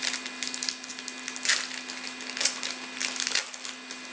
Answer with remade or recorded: recorded